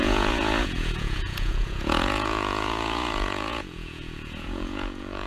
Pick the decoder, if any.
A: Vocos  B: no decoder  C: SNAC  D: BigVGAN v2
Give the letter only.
A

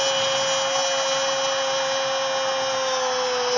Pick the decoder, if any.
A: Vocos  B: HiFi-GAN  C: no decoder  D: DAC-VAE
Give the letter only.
C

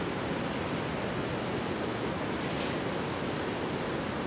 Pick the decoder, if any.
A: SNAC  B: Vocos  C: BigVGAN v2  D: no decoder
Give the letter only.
D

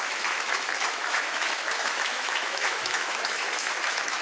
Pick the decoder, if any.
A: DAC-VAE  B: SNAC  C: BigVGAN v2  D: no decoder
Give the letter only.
A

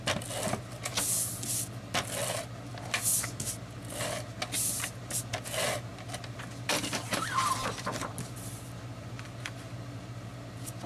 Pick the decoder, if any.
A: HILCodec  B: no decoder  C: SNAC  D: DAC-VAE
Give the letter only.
B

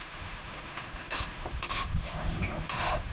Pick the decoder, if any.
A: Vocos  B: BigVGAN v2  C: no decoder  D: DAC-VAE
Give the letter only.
D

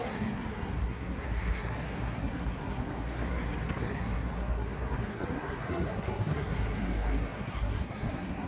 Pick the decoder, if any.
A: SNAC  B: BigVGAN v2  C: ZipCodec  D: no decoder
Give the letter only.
A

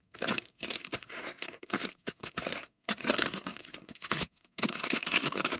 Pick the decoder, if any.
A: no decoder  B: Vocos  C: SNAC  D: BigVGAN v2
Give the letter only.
C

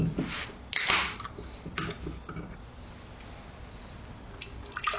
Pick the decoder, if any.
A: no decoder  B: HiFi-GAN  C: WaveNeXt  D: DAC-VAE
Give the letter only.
A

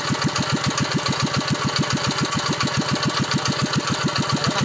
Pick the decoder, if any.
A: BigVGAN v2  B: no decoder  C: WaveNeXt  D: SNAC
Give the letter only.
B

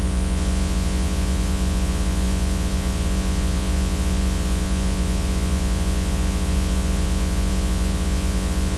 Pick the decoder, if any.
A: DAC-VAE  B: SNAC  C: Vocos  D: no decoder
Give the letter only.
C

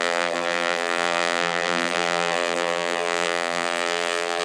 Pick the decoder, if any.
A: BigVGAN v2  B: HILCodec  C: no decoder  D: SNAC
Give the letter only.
A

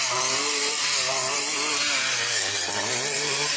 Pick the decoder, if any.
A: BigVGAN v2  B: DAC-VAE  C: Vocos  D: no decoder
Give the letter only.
A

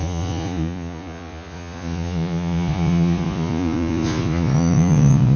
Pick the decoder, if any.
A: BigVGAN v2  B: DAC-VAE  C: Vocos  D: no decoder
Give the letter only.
C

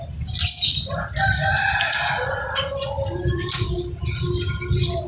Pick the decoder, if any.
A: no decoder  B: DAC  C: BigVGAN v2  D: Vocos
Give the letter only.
A